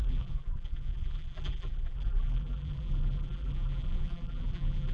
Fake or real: fake